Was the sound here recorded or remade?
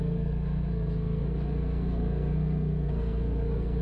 remade